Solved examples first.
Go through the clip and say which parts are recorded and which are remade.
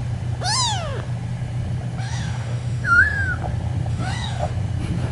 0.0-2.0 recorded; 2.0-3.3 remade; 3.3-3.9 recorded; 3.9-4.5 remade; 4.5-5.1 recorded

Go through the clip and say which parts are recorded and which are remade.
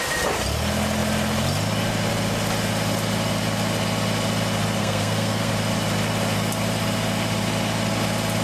0.0-4.8 recorded; 4.8-5.5 remade; 5.5-8.4 recorded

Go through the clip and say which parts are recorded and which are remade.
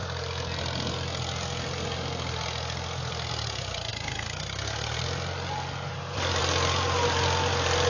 0.0-7.9 recorded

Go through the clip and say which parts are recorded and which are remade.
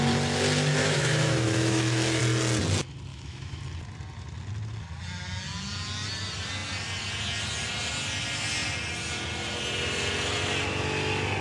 0.0-0.8 recorded; 0.8-2.2 remade; 2.2-3.1 recorded; 3.1-3.6 remade; 3.6-11.4 recorded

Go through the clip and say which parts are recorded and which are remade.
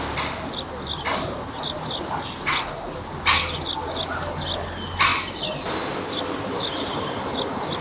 0.0-7.8 recorded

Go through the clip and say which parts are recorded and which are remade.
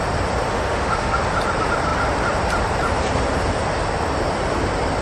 0.0-0.5 recorded; 0.5-1.2 remade; 1.2-5.0 recorded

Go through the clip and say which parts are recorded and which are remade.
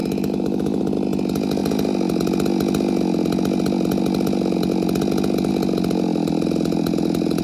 0.0-0.8 remade; 0.8-7.4 recorded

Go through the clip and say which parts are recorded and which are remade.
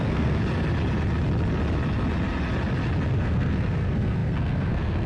0.0-0.4 remade; 0.4-3.1 recorded; 3.1-5.1 remade